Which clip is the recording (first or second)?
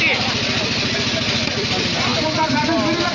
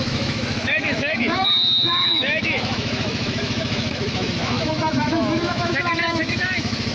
first